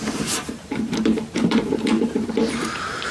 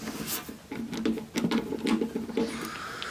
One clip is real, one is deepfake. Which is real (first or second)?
second